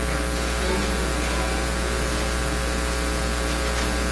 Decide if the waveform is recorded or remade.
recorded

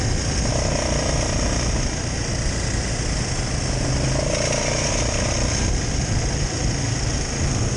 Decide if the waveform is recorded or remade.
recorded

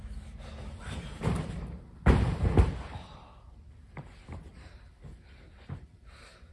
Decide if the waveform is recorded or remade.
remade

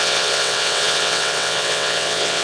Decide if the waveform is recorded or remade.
remade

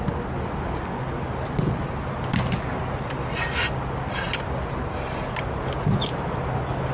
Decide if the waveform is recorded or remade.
recorded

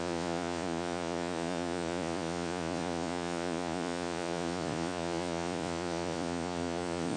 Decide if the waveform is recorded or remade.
remade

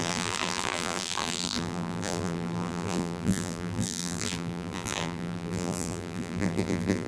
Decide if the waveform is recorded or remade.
remade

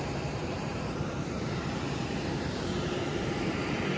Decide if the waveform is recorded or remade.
remade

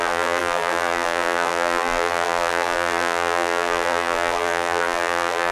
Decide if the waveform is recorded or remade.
remade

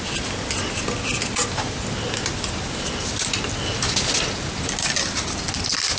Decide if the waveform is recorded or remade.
recorded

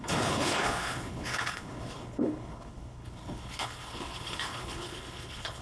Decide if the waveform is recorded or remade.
remade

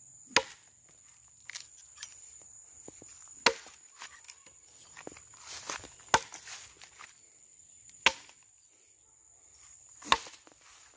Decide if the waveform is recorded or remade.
recorded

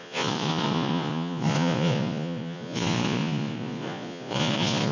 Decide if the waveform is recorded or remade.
remade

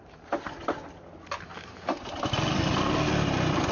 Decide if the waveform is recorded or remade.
recorded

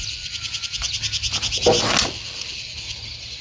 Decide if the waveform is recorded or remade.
recorded